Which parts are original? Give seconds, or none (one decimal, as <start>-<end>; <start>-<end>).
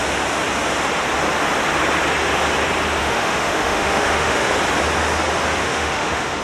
0.0-3.0; 4.5-5.6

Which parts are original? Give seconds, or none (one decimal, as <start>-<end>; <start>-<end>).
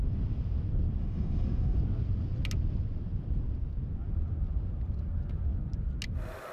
0.0-1.0; 1.8-6.5